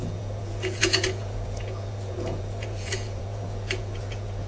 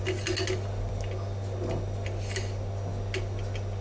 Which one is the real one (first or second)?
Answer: second